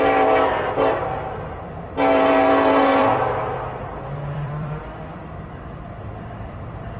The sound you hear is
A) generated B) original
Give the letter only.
A